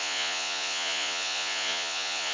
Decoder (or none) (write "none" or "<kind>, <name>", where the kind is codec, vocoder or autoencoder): vocoder, Vocos